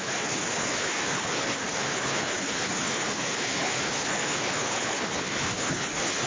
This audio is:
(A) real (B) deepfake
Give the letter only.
B